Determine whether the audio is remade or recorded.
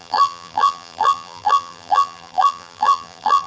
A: remade